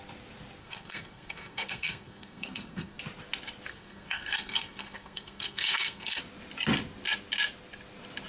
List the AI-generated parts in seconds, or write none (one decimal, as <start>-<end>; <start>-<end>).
0.6-3.0; 3.7-6.2